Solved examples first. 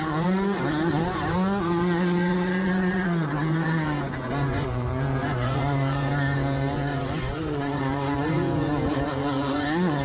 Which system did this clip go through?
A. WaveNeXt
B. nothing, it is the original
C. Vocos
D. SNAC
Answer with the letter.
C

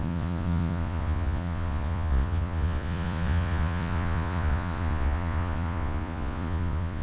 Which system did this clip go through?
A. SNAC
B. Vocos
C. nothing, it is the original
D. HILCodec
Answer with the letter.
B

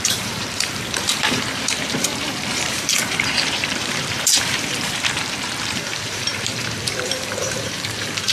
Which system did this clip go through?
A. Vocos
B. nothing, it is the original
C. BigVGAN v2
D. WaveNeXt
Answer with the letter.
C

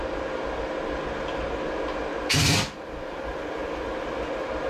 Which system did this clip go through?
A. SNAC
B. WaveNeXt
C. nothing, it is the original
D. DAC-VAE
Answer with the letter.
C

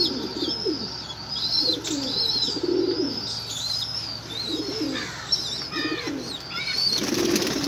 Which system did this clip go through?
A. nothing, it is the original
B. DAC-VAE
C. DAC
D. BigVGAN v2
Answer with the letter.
A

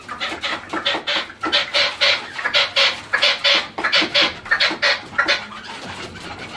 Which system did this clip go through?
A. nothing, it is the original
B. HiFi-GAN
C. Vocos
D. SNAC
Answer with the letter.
A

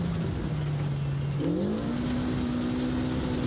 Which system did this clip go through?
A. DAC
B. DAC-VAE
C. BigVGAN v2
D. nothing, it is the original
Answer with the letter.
D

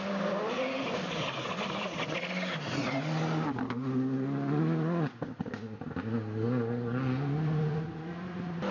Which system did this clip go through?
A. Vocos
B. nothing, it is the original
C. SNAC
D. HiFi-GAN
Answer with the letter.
B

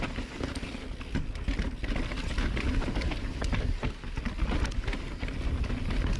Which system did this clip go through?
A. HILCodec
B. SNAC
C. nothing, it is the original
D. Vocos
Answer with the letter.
C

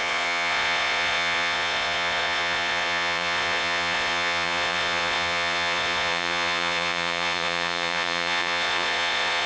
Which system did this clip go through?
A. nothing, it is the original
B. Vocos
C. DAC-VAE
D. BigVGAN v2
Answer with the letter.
B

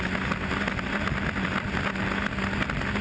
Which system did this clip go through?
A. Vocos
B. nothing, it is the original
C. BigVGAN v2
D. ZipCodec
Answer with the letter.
B